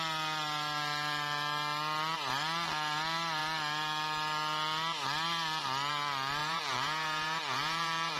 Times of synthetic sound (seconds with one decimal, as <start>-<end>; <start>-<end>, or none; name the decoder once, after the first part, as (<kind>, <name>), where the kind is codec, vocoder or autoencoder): 6.4-8.2 (vocoder, Vocos)